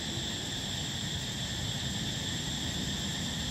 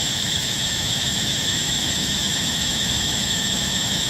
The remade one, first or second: second